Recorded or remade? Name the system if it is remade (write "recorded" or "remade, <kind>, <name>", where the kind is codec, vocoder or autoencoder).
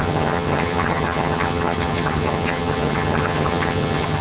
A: remade, vocoder, HiFi-GAN